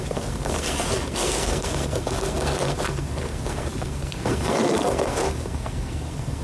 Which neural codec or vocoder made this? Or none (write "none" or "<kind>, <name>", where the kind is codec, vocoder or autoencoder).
codec, SNAC